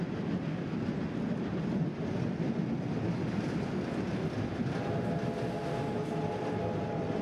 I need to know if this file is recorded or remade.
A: recorded